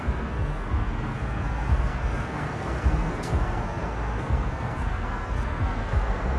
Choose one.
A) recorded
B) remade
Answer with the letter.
B